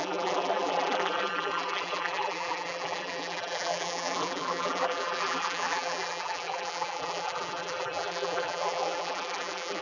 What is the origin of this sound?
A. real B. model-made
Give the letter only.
B